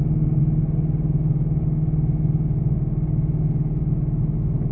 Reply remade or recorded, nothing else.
recorded